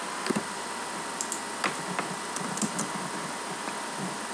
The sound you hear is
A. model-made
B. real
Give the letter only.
B